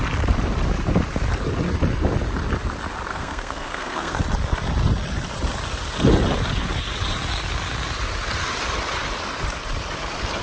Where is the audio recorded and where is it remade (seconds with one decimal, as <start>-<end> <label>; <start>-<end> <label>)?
0.0-3.1 recorded; 3.1-4.2 remade; 4.2-10.4 recorded